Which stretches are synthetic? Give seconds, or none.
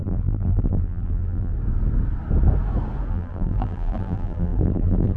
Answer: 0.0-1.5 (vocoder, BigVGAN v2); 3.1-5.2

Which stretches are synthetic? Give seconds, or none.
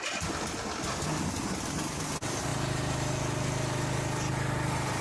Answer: none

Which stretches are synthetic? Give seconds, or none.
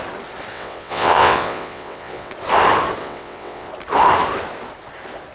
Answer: 0.5-2.3 (vocoder, WaveNeXt); 3.0-3.7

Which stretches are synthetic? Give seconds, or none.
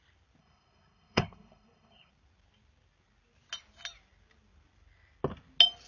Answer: 0.4-2.1 (codec, HILCodec)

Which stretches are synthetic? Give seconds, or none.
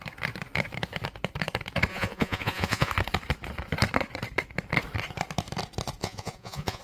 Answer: 1.9-2.9 (vocoder, Vocos); 6.0-6.8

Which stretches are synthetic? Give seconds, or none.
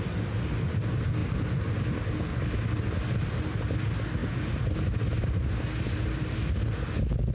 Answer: none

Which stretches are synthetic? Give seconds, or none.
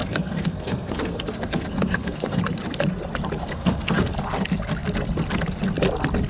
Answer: 0.0-2.4 (codec, SNAC); 3.4-4.1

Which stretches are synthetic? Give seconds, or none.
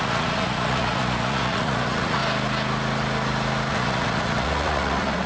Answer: 0.0-2.2 (vocoder, Vocos); 3.7-5.3